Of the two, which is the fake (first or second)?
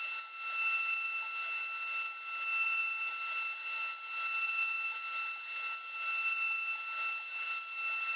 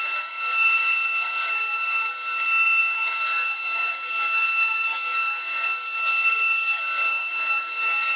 second